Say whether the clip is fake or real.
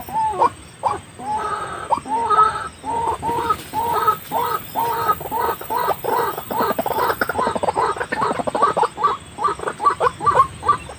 real